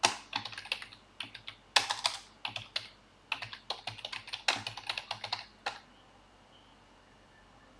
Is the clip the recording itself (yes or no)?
yes